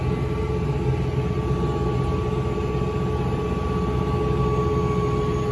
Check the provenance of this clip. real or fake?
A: real